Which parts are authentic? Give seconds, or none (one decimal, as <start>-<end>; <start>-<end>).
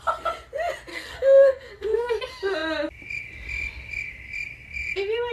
0.0-0.9; 2.1-5.3